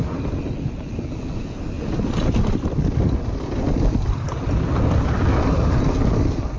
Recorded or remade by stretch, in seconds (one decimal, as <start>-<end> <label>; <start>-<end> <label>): 0.0-6.6 recorded